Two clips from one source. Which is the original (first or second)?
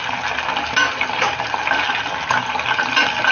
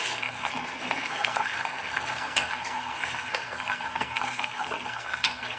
first